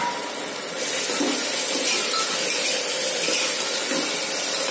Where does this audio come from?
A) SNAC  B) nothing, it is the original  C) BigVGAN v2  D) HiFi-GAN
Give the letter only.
B